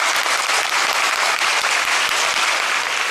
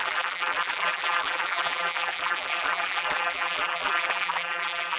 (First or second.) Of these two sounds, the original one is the first